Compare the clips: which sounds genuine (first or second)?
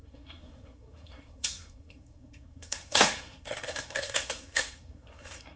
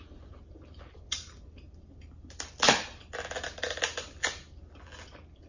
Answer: second